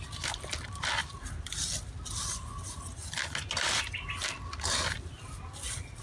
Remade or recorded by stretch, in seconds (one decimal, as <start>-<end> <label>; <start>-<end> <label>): 0.0-6.0 recorded